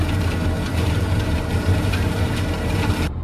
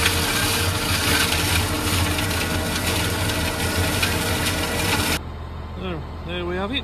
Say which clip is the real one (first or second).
second